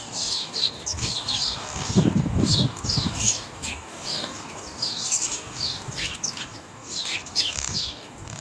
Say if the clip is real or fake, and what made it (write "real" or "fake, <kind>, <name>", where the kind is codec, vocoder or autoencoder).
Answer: fake, codec, DAC